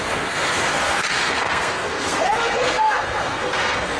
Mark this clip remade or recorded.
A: remade